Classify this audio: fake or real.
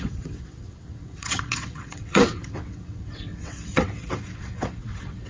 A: fake